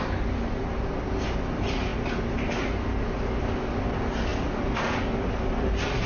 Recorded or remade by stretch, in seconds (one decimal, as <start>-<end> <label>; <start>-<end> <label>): 0.0-6.1 recorded